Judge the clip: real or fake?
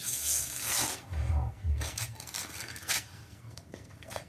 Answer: fake